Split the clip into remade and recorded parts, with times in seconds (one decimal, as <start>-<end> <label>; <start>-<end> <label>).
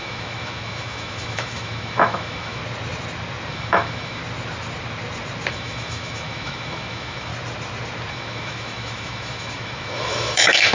0.0-2.6 remade; 2.6-3.5 recorded; 3.5-4.2 remade; 4.2-5.5 recorded; 5.5-7.3 remade; 7.3-8.1 recorded; 8.1-10.7 remade